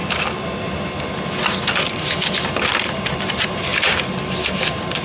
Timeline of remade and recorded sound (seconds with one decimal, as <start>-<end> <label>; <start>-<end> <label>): 0.0-3.0 recorded; 3.0-3.7 remade; 3.7-5.0 recorded